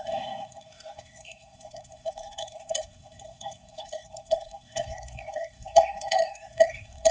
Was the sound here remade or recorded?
remade